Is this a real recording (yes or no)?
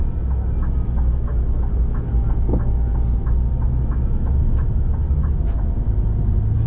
yes